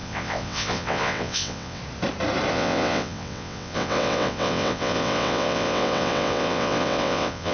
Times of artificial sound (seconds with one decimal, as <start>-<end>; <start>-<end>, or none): 0.0-1.8; 2.5-7.5

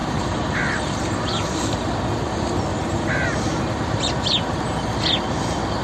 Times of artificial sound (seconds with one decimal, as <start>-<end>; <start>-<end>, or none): 0.0-0.6; 2.7-4.1

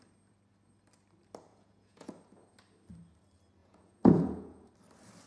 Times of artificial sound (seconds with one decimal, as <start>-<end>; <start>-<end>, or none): 1.5-2.1; 3.6-4.7

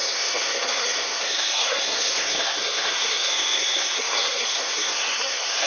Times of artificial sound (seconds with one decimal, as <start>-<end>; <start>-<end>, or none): 0.0-5.7

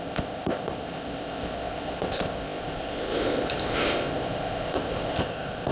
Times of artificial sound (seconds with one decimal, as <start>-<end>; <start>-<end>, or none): 0.0-5.7